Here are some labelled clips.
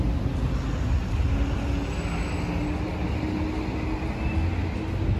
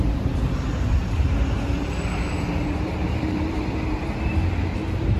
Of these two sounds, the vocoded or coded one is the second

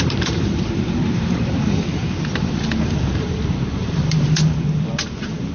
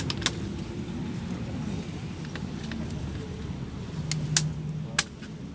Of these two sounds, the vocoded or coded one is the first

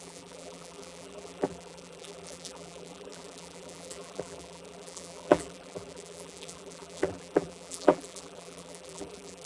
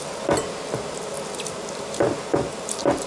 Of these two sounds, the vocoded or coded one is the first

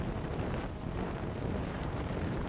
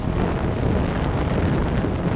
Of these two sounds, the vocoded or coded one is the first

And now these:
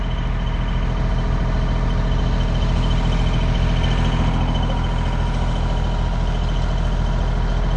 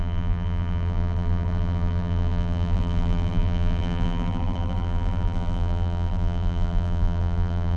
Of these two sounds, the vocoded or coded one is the second